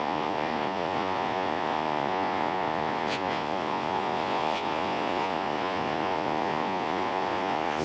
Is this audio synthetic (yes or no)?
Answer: yes